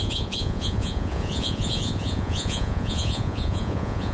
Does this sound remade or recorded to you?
remade